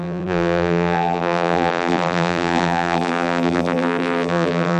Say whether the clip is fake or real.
fake